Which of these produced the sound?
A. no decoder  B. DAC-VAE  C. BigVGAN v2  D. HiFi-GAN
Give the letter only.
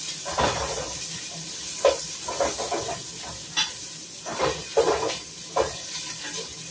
A